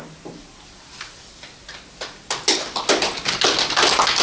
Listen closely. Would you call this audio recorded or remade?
recorded